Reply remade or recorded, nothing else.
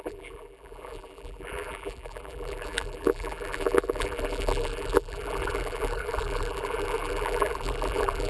remade